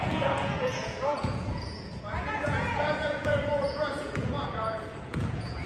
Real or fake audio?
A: fake